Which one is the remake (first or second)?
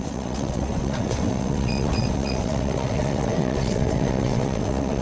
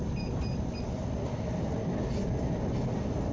first